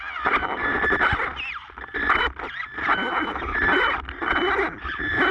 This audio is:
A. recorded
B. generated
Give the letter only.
A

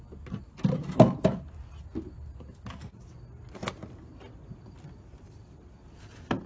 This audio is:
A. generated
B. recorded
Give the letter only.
B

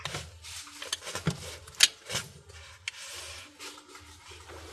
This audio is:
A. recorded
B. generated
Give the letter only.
A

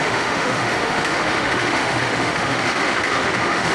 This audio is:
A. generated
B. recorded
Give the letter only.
A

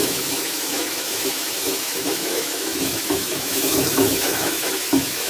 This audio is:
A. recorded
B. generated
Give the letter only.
B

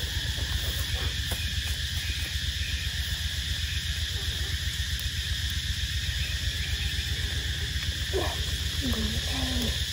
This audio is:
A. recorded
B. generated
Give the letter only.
A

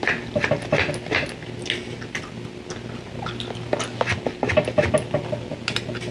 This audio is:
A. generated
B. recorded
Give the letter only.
B